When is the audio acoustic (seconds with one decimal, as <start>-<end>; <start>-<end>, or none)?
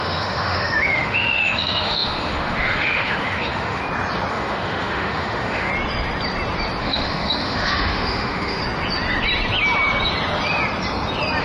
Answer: 3.8-4.3; 5.7-6.8; 8.6-11.4